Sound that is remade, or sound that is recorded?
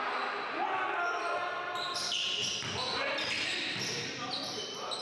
recorded